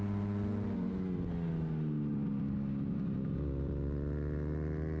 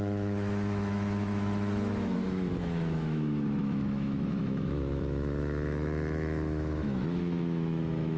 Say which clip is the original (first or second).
first